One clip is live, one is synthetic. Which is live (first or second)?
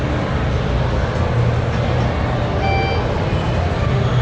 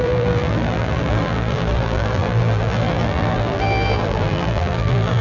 first